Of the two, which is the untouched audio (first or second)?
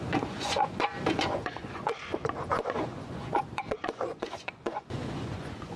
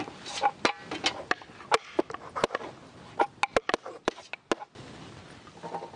second